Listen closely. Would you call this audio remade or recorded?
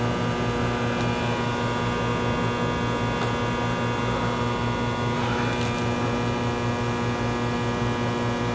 recorded